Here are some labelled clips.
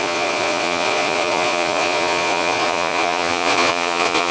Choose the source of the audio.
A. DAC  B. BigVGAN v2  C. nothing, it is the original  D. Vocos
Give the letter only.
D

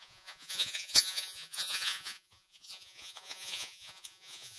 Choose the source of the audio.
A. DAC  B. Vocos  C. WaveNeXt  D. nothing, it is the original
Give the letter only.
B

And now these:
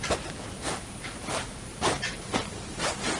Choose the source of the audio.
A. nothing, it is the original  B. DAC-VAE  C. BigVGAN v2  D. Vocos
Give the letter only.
A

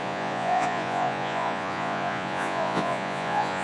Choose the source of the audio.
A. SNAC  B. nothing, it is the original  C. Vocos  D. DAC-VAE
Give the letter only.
C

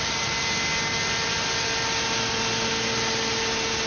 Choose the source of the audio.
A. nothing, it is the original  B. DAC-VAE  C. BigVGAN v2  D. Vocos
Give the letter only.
A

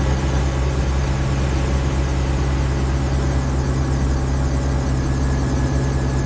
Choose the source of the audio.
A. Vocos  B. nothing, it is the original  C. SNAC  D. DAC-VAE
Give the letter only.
B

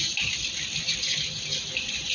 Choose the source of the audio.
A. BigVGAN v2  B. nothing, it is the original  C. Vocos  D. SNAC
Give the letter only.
B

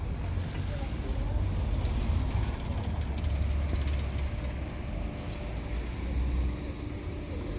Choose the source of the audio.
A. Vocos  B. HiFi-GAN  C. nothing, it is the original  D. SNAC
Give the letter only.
C